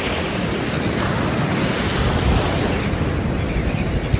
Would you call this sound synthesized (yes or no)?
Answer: no